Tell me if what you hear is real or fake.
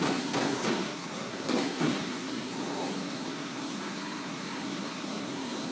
fake